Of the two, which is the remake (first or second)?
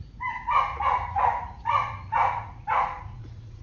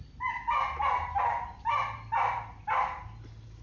first